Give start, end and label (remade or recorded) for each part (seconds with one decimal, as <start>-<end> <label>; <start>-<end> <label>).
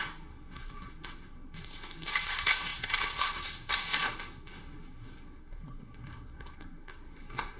0.0-7.6 remade